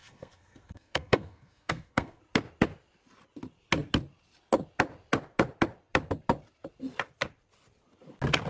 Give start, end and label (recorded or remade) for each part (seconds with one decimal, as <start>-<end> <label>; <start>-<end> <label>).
0.0-2.2 remade; 2.2-8.5 recorded